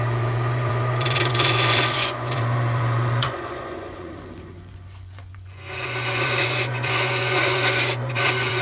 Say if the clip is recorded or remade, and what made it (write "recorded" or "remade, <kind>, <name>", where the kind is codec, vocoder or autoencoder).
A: remade, vocoder, Vocos